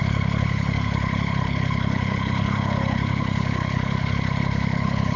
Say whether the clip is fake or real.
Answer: fake